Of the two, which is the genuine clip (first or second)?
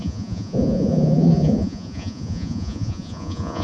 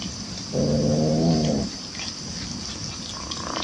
second